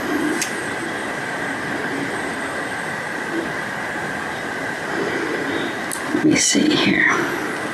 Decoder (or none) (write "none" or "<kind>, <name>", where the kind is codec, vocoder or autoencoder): none